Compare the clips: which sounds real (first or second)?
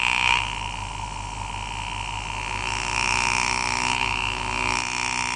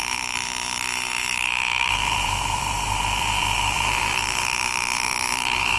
first